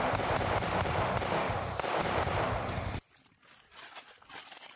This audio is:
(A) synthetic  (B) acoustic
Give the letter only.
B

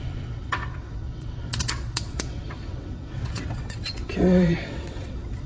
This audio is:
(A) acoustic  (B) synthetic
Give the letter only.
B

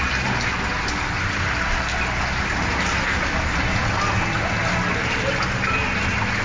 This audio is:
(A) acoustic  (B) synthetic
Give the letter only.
A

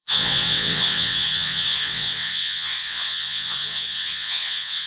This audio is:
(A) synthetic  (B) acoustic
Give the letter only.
A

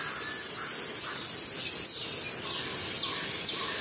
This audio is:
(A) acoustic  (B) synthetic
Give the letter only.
A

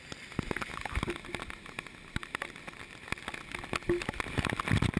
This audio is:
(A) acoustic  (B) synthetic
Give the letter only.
A